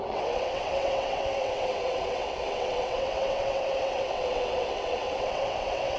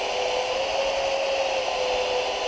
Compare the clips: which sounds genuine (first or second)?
second